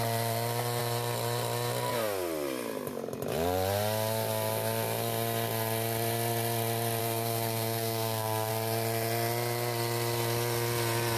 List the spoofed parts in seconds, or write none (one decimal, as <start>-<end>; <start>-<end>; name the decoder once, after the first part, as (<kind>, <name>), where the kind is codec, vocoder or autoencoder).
7.0-8.5 (codec, SNAC)